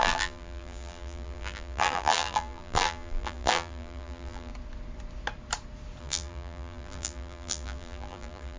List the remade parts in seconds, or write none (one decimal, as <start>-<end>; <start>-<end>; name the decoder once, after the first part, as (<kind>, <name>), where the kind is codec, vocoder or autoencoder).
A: 0.0-4.5 (vocoder, BigVGAN v2); 6.0-8.6